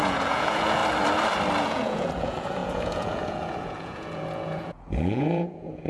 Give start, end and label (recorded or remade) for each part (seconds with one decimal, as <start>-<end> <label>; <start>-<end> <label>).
0.0-0.8 remade; 0.8-1.6 recorded; 1.6-5.9 remade